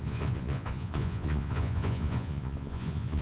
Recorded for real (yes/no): no